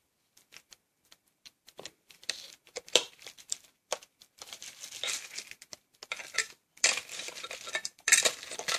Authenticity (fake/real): fake